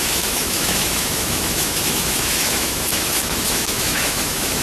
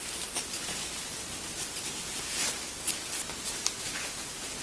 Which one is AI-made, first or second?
first